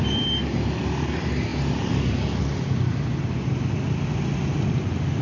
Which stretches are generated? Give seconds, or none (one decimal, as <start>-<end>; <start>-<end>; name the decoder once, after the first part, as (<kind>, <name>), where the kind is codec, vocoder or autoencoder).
none